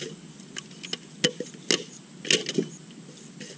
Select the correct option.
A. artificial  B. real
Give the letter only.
B